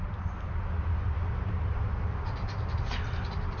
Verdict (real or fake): real